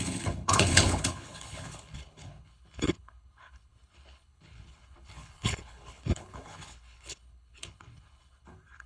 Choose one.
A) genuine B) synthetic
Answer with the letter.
B